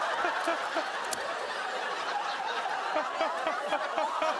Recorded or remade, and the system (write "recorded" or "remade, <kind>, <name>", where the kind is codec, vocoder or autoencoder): recorded